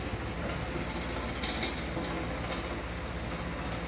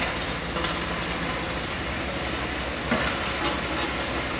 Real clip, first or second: first